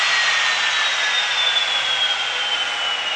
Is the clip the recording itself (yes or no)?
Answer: yes